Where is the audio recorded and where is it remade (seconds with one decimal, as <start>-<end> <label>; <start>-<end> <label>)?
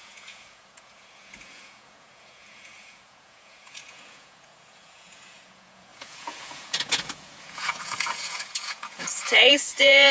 0.0-10.1 remade